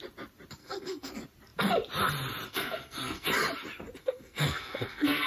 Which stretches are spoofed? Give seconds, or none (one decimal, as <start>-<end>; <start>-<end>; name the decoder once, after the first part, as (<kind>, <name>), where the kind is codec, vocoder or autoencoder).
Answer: 0.6-1.1 (codec, SNAC); 2.5-3.3; 4.0-5.3